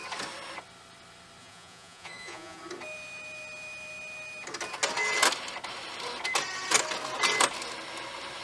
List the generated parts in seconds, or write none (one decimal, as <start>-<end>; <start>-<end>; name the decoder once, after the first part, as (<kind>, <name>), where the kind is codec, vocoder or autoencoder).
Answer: 1.4-2.6 (vocoder, Vocos)

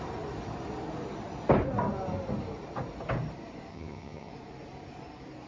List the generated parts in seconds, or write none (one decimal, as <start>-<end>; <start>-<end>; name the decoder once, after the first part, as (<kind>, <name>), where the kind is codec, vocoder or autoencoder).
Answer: 3.7-4.3 (vocoder, HiFi-GAN)

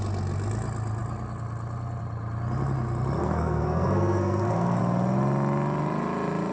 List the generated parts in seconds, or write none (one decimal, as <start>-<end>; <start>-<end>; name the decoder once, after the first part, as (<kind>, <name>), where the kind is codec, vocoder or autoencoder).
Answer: 3.2-4.8 (codec, SNAC)

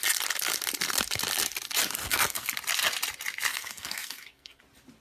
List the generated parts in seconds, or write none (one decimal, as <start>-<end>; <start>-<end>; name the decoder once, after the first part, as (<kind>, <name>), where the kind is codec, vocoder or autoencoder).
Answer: 2.0-2.5 (codec, SNAC); 3.5-4.6

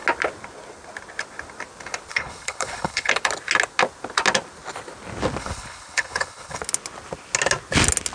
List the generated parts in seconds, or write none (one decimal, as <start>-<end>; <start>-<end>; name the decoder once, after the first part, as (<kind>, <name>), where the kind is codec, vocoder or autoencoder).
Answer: 2.1-3.1 (codec, HILCodec); 5.4-6.6

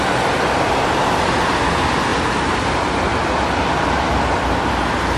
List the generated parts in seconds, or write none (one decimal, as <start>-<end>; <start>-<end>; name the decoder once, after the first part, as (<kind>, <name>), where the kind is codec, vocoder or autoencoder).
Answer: none